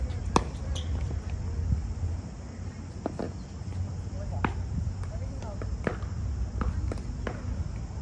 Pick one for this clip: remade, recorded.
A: recorded